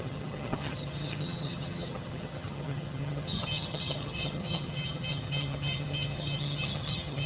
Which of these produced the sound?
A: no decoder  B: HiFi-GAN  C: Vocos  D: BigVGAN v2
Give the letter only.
B